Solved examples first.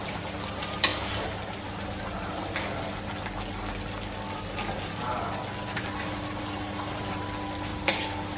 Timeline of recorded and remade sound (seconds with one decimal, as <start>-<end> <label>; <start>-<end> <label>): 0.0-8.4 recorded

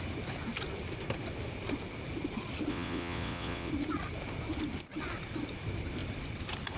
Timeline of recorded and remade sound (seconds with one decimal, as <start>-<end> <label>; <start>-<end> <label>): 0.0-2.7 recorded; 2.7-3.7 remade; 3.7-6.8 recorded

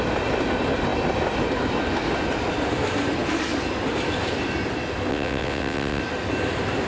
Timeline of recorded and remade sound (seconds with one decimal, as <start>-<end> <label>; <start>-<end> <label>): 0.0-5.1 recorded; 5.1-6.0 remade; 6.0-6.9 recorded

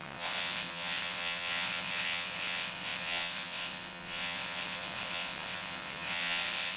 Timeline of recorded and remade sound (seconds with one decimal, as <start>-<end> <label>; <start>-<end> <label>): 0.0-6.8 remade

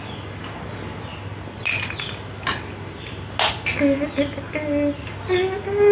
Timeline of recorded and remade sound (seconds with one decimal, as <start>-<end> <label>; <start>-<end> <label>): 0.0-5.9 recorded